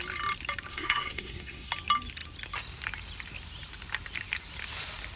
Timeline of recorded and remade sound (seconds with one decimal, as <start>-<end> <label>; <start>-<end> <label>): 0.0-0.7 recorded; 0.7-1.7 remade; 1.7-5.2 recorded